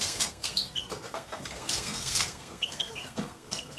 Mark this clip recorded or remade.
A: remade